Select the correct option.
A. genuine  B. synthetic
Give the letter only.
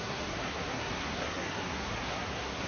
B